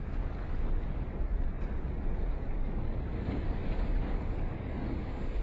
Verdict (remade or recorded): remade